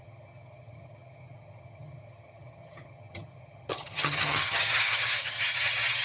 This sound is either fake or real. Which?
fake